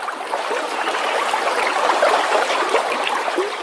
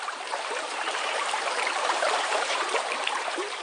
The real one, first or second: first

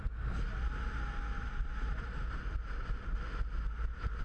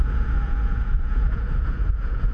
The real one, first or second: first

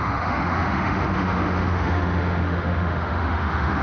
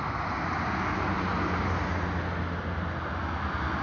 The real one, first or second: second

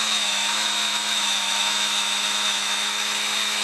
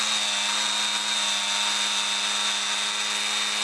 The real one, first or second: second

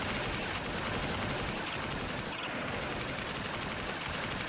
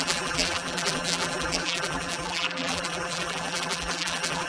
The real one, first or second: first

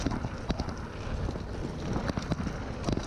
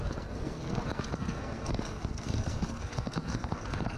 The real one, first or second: first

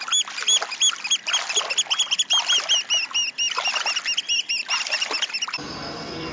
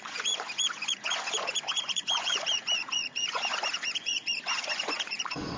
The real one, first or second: first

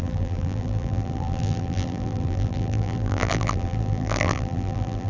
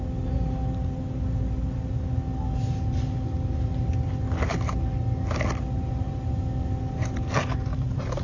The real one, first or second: second